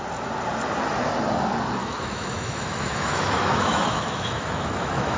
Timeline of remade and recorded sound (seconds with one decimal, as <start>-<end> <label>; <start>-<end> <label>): 0.0-1.8 recorded; 1.8-5.2 remade